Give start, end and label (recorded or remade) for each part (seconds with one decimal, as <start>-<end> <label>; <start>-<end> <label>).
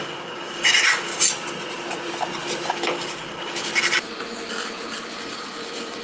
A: 0.0-1.1 remade; 1.1-2.7 recorded; 2.7-3.7 remade; 3.7-5.2 recorded; 5.2-6.0 remade